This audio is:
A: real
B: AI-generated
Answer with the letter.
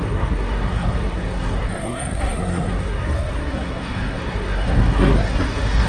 B